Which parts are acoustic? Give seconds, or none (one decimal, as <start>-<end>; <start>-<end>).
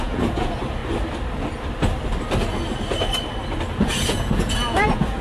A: 0.8-3.7